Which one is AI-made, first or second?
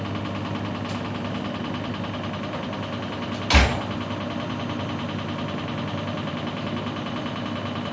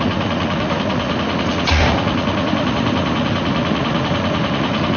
second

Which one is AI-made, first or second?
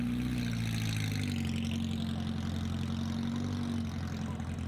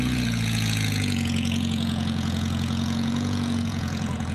second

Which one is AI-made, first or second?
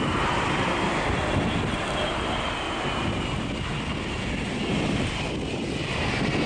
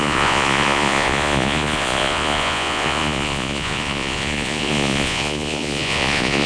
second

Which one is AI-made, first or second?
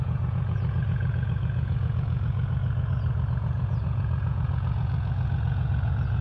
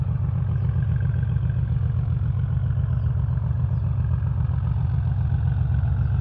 first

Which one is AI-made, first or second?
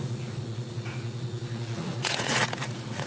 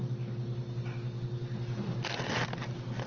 first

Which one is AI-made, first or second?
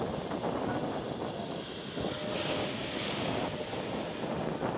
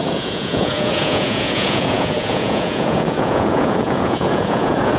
second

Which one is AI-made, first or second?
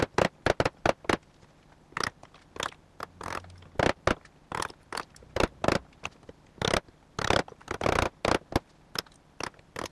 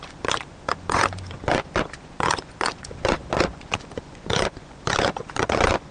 second